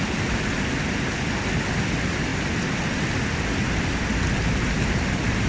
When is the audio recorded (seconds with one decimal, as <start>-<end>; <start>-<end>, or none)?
0.0-5.5